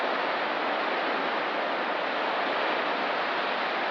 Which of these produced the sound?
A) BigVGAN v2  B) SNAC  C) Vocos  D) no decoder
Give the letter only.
D